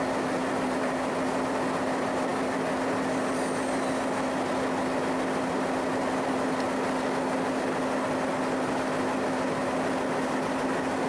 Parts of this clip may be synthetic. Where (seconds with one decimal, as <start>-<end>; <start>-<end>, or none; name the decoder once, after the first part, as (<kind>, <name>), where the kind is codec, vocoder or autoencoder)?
0.4-1.1 (vocoder, BigVGAN v2)